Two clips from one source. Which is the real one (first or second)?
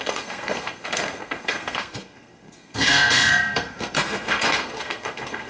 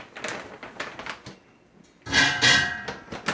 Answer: second